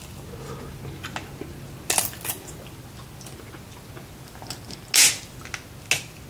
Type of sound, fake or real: real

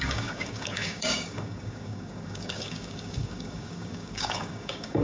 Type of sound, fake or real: fake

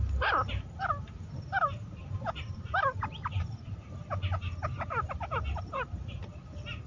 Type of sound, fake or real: fake